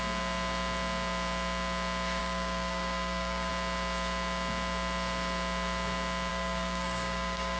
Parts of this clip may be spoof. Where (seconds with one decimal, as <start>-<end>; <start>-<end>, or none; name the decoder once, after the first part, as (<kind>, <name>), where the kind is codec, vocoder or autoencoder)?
2.2-3.5 (codec, DAC); 6.3-7.6